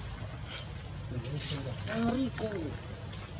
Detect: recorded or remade recorded